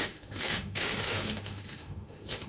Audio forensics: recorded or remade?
remade